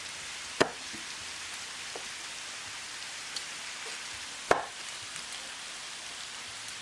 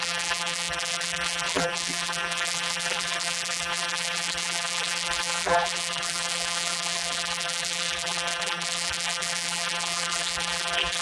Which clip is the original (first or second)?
first